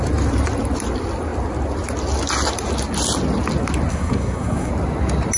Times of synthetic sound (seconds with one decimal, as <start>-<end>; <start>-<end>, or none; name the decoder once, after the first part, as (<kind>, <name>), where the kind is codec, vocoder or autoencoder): 3.9-4.7 (codec, SNAC)